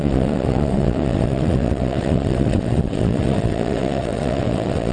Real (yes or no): no